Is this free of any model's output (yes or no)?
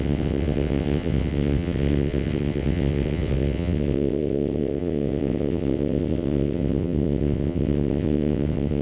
no